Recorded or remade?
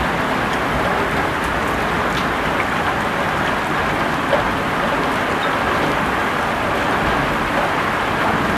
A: recorded